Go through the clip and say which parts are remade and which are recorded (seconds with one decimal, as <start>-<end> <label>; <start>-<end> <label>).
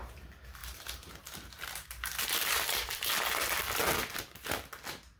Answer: 0.0-0.6 recorded; 0.6-3.1 remade; 3.1-5.2 recorded